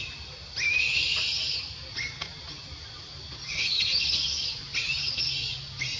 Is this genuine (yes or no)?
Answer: yes